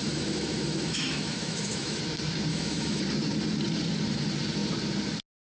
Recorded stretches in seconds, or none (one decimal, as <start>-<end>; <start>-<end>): 2.0-2.5; 3.0-5.5